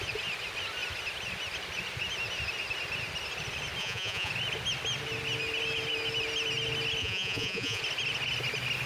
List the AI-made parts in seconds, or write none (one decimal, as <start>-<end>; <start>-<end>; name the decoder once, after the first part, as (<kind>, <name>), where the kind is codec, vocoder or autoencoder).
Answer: 3.8-4.3 (vocoder, Vocos); 7.0-7.8